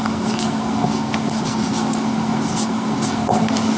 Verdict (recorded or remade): remade